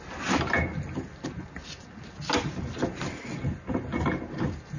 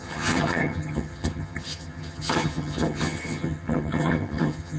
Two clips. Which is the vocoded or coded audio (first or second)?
second